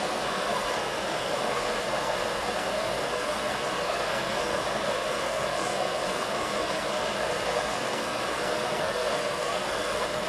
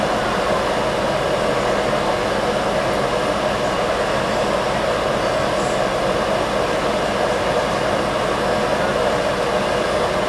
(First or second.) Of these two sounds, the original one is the second